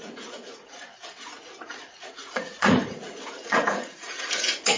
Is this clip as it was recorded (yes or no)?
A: no